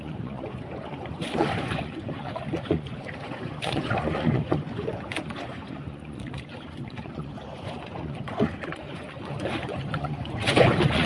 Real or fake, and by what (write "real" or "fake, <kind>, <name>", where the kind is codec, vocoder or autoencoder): fake, vocoder, Vocos